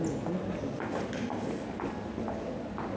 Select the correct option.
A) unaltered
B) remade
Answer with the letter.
A